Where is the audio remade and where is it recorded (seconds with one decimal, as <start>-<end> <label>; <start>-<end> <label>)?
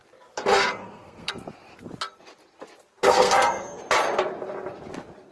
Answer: 0.0-0.8 recorded; 0.8-1.3 remade; 1.3-3.0 recorded; 3.0-3.8 remade; 3.8-5.3 recorded